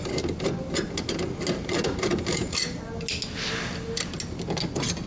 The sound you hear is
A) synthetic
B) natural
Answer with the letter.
B